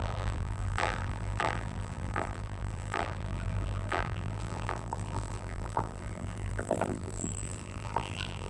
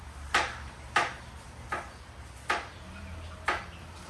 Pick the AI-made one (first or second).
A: first